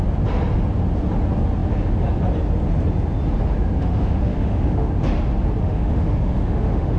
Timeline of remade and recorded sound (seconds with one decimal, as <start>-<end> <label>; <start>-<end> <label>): 0.0-3.8 recorded; 3.8-4.9 remade; 4.9-5.6 recorded; 5.6-7.0 remade